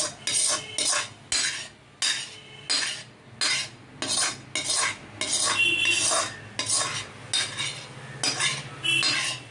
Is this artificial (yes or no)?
no